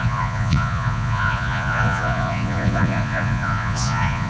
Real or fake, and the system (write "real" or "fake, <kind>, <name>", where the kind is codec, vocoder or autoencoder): fake, vocoder, Vocos